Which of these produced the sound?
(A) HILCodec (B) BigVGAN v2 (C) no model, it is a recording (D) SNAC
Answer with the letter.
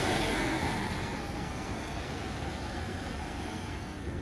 D